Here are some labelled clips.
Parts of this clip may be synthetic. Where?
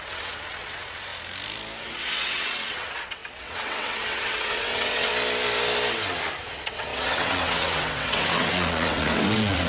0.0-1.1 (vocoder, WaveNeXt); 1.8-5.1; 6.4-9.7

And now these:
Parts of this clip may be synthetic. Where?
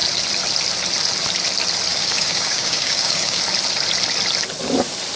1.9-3.4 (codec, DAC)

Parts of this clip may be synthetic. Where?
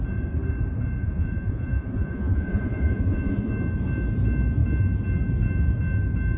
1.0-3.5 (vocoder, Vocos)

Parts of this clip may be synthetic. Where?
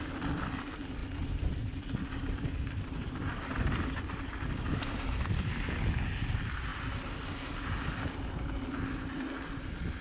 none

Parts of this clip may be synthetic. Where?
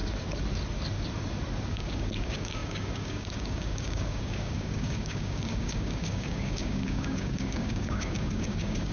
1.7-8.9 (codec, DAC)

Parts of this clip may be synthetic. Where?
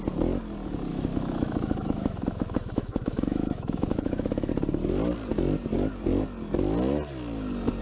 0.9-4.5 (autoencoder, DAC-VAE)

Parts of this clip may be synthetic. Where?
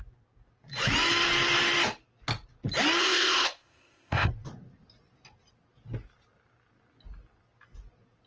3.0-4.3 (codec, ZipCodec)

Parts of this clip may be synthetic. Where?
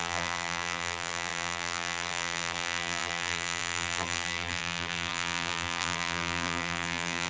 0.0-7.3 (vocoder, BigVGAN v2)